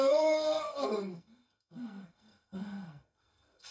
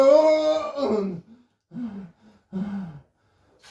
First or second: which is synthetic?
first